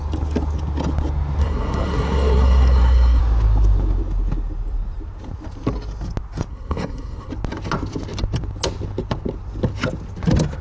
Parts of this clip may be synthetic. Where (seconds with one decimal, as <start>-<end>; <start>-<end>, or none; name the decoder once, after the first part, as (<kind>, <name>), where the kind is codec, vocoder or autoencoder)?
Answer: 1.4-3.2 (codec, SNAC); 6.5-7.3